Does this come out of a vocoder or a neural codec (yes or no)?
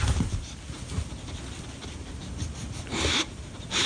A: no